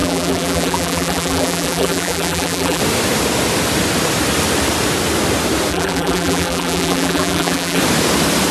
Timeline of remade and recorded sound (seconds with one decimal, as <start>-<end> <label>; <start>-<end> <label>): 0.0-2.8 remade; 2.8-5.7 recorded; 5.7-7.8 remade; 7.8-8.5 recorded